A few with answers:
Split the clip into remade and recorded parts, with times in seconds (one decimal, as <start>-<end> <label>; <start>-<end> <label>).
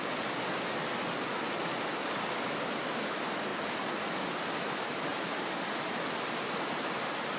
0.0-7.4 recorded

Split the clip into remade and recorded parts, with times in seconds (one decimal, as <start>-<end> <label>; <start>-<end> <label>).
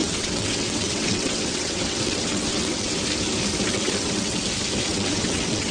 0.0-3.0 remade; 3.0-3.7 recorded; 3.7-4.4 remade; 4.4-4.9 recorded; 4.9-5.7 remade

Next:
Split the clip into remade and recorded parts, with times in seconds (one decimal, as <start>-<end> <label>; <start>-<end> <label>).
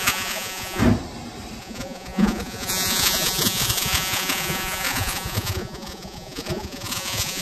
0.0-0.8 remade; 0.8-1.6 recorded; 1.6-7.4 remade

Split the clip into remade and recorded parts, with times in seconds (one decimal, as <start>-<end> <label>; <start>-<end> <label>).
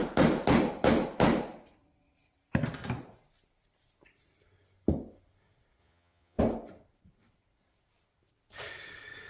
0.0-5.8 recorded; 5.8-6.4 remade; 6.4-9.3 recorded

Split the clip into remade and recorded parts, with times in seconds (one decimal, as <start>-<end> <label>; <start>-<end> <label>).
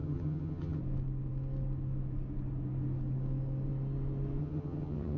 0.0-0.8 remade; 0.8-4.4 recorded; 4.4-5.2 remade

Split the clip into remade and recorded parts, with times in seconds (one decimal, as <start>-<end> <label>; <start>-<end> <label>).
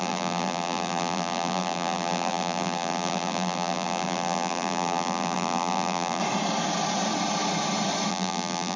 0.0-6.2 remade; 6.2-8.1 recorded; 8.1-8.8 remade